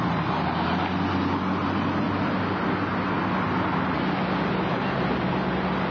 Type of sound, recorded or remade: recorded